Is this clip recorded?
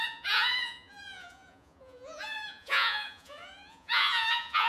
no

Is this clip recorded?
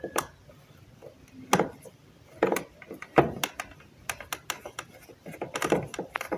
yes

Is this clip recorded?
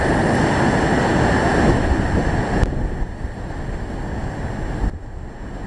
yes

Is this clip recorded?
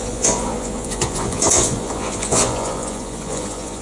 no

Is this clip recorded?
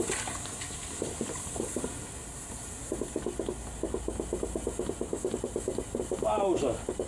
yes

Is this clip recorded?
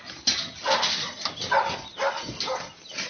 yes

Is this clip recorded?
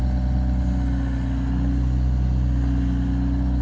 yes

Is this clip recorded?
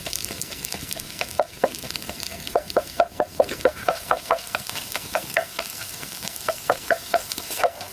no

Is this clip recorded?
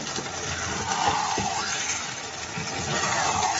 yes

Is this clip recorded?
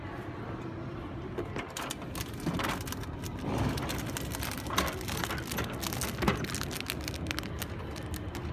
yes